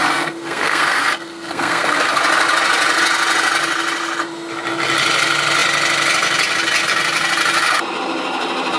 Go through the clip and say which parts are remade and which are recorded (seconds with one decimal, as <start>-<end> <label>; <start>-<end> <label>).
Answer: 0.0-2.2 remade; 2.2-8.8 recorded